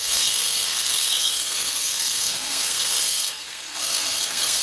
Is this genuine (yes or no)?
no